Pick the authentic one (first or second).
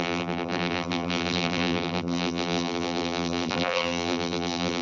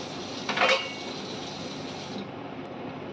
second